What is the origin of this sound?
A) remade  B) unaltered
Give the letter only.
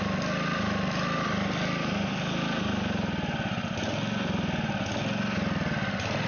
B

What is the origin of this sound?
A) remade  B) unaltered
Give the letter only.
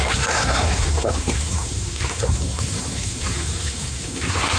A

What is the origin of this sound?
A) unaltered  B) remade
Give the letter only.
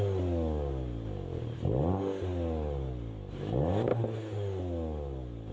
A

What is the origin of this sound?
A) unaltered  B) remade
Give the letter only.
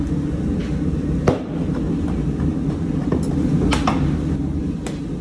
A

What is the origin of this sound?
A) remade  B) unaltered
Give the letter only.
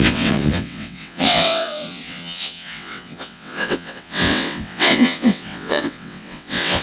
A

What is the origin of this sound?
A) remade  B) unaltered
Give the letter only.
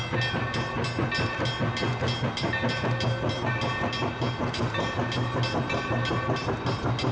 B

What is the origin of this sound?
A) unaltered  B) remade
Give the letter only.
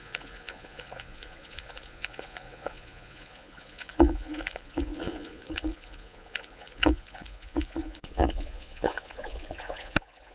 B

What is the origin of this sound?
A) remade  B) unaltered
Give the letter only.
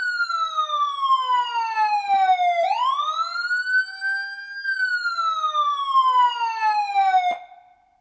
B